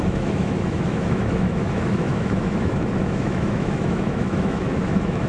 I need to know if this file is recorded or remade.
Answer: remade